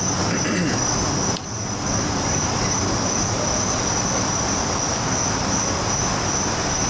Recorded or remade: recorded